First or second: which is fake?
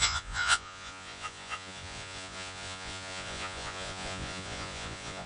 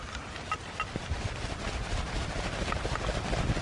first